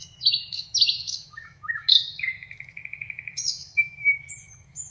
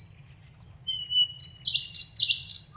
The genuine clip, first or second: second